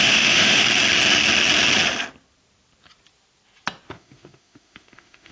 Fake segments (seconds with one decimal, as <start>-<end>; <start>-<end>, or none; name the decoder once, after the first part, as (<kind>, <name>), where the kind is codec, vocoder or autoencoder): 0.0-0.7 (autoencoder, DAC-VAE); 3.9-5.3